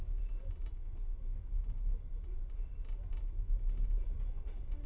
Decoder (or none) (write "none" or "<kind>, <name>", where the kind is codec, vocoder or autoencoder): none